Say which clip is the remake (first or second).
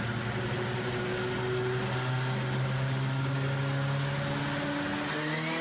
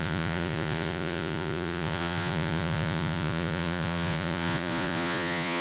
second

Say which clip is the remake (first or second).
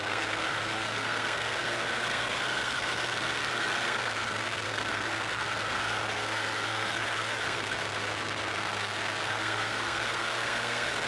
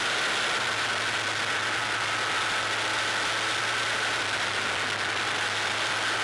first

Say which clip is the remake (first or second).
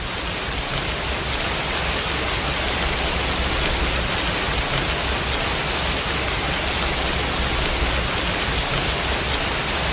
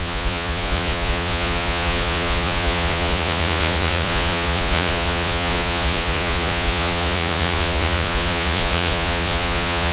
second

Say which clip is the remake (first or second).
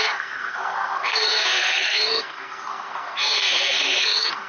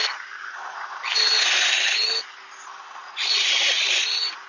first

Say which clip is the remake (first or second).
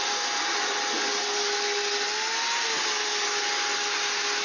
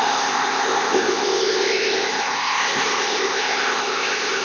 second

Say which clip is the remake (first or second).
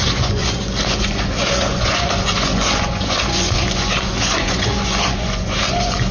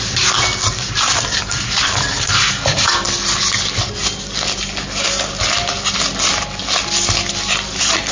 first